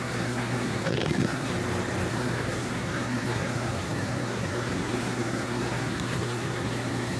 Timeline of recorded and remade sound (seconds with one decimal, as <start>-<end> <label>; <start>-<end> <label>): 0.0-1.5 remade; 1.5-2.1 recorded; 2.1-7.2 remade